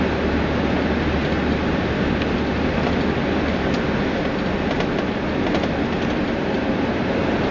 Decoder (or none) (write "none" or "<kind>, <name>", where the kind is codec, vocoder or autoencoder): none